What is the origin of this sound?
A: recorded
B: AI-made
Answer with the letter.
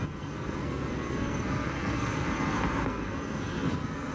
B